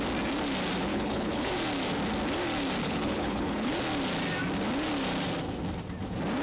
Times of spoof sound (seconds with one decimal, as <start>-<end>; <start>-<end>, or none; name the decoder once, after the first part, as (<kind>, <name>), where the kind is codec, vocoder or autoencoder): 0.9-1.5 (codec, HILCodec); 2.8-3.7